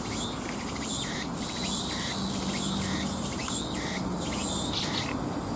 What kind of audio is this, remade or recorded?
recorded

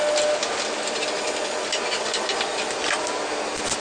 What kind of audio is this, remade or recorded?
recorded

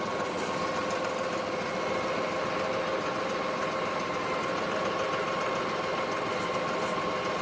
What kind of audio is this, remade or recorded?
recorded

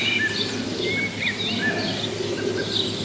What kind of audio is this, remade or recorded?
recorded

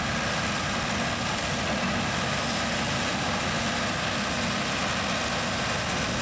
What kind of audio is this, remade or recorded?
recorded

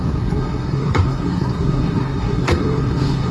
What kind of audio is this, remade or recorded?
remade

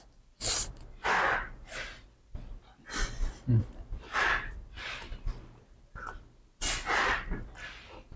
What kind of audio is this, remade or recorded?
recorded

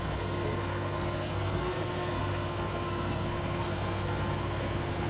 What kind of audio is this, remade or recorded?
remade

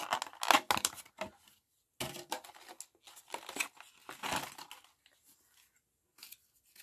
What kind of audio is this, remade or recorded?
recorded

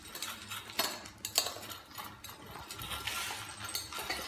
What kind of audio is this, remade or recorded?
recorded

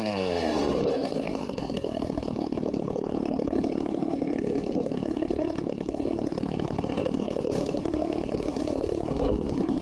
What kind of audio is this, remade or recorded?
remade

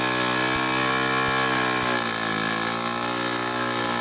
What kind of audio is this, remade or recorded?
recorded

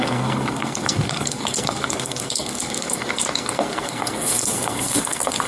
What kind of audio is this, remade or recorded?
remade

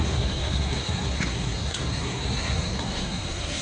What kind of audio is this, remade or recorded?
remade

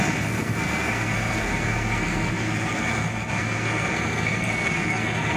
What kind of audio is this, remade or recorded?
remade